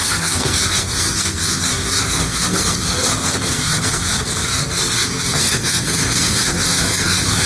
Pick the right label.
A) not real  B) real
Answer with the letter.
A